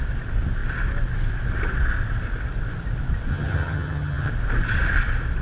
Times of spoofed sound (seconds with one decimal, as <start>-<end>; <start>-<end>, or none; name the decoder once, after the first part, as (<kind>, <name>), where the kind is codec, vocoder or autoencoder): 3.3-4.3 (vocoder, HiFi-GAN)